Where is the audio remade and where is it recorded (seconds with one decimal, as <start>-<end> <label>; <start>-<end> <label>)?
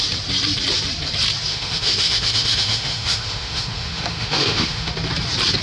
0.0-1.5 recorded; 1.5-4.9 remade; 4.9-5.6 recorded